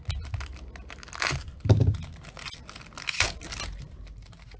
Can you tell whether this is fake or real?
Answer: real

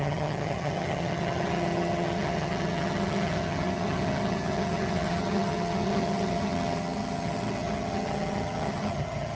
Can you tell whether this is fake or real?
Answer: fake